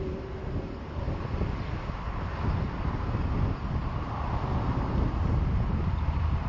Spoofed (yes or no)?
no